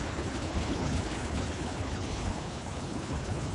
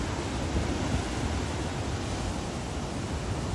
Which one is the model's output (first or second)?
first